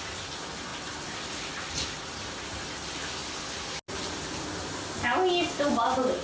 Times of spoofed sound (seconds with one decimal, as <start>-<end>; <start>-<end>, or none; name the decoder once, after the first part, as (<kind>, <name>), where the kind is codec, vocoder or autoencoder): none